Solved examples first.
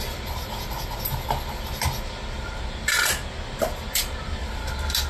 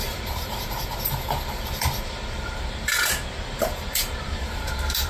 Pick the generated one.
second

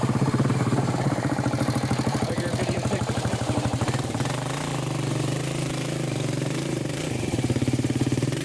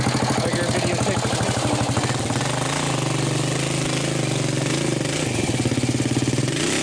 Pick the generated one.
first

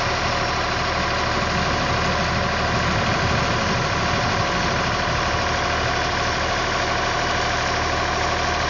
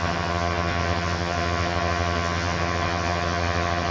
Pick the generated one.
second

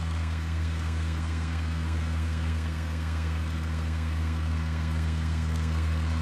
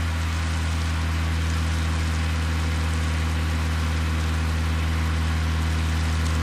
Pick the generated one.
first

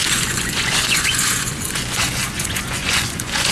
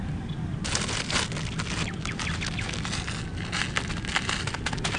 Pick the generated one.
first